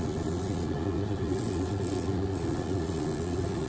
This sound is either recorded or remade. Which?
remade